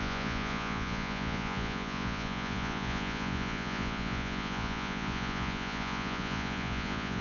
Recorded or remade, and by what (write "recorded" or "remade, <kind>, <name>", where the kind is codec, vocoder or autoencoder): remade, vocoder, Vocos